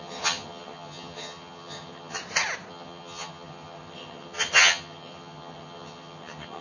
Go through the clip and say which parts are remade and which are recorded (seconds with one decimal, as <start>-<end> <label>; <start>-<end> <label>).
0.0-2.2 remade; 2.2-2.7 recorded; 2.7-6.6 remade